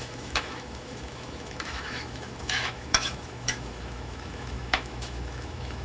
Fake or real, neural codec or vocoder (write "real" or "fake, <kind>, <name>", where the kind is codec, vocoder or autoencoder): fake, autoencoder, DAC-VAE